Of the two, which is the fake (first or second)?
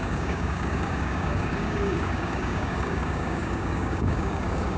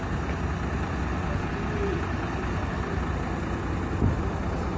first